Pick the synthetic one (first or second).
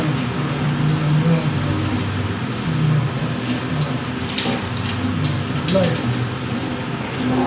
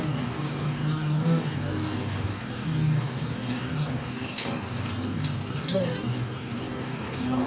second